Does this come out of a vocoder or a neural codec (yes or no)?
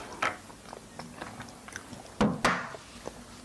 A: no